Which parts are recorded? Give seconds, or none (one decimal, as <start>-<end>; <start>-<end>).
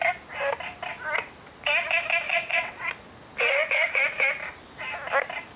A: 0.0-2.3; 2.9-5.6